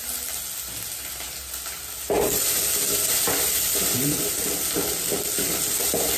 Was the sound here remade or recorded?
recorded